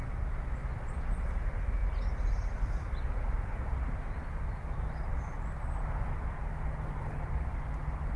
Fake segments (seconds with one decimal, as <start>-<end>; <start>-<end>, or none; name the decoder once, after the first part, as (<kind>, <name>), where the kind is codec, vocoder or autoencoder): none